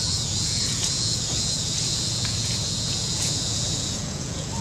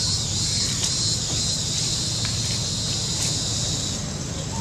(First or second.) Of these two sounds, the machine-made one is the first